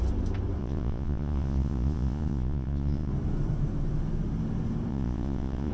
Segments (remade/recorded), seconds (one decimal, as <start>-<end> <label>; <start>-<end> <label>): 0.0-0.6 recorded; 0.6-3.1 remade; 3.1-4.9 recorded; 4.9-5.7 remade